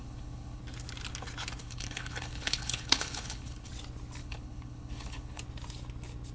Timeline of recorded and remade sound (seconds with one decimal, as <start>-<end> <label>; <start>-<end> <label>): 0.0-0.6 remade; 0.6-1.6 recorded; 1.6-3.7 remade; 3.7-4.2 recorded; 4.2-5.4 remade; 5.4-6.3 recorded